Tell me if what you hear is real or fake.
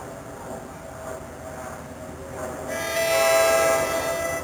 real